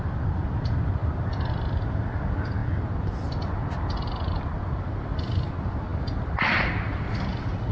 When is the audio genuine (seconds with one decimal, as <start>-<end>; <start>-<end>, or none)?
0.0-7.7